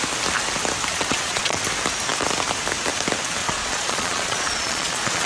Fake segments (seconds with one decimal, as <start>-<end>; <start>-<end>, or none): 0.9-1.6; 3.4-5.3